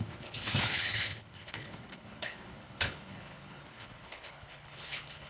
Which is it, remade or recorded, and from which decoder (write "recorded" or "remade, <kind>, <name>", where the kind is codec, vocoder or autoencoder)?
remade, codec, HILCodec